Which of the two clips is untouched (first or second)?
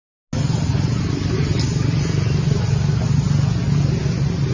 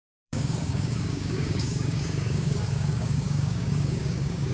first